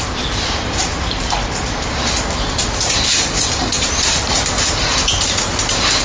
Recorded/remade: remade